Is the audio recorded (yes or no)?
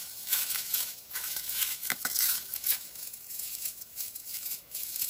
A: no